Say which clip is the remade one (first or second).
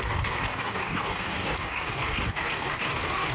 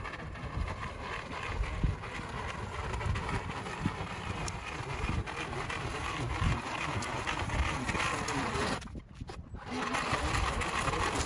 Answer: first